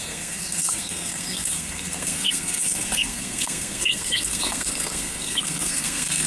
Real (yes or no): no